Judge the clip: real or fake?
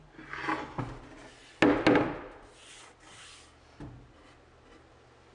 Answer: real